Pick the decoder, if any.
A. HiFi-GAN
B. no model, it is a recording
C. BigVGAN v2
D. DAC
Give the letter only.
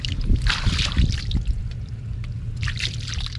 B